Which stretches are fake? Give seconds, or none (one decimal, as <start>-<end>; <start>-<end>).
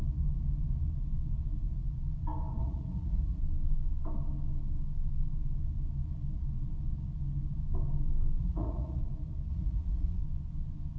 2.6-3.4; 8.4-9.0; 9.5-10.2